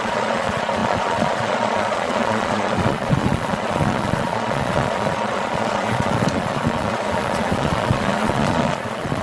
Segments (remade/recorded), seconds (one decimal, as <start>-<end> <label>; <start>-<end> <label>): 0.0-9.2 remade